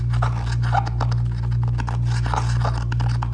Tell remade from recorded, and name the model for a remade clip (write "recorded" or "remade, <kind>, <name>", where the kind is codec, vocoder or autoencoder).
recorded